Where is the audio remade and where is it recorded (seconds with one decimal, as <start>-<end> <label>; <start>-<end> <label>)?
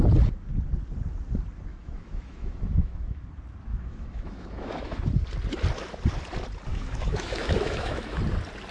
0.0-1.7 recorded; 1.7-3.2 remade; 3.2-3.7 recorded; 3.7-5.0 remade; 5.0-6.7 recorded; 6.7-8.2 remade; 8.2-8.7 recorded